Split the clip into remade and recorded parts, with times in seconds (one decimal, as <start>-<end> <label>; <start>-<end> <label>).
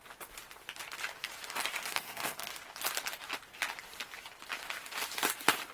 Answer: 0.0-1.9 recorded; 1.9-2.5 remade; 2.5-5.7 recorded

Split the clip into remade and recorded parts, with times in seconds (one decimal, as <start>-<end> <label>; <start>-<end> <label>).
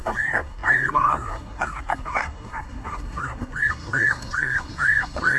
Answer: 0.0-5.4 remade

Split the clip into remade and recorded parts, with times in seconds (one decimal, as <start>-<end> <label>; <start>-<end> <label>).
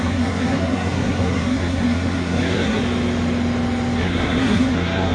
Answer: 0.0-2.8 remade; 2.8-4.0 recorded; 4.0-5.1 remade